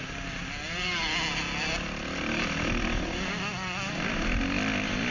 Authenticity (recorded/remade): recorded